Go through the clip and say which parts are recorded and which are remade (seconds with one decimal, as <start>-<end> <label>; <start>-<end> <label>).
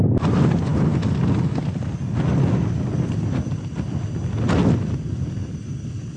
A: 0.0-6.2 recorded